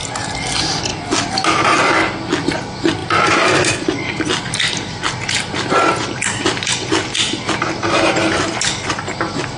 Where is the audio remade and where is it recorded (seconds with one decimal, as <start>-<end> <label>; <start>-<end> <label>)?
0.0-9.6 recorded

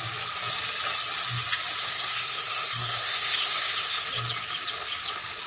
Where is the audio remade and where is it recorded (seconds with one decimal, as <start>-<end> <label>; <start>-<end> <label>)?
0.0-1.8 recorded; 1.8-4.1 remade; 4.1-5.5 recorded

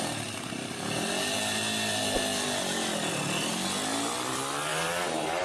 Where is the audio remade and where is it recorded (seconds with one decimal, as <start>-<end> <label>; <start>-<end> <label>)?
0.0-5.4 recorded

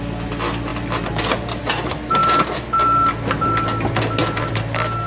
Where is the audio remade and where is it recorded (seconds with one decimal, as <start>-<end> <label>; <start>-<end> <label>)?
0.0-5.1 recorded

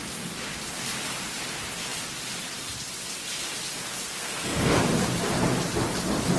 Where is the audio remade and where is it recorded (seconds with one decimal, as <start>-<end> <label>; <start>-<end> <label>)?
0.0-4.2 recorded; 4.2-4.8 remade; 4.8-6.4 recorded